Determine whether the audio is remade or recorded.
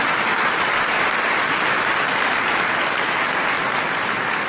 recorded